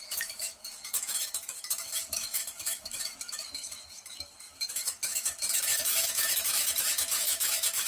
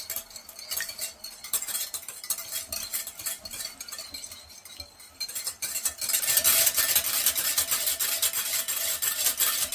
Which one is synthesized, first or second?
first